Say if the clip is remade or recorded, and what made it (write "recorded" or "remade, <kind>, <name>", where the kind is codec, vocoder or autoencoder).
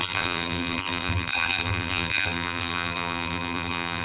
remade, vocoder, BigVGAN v2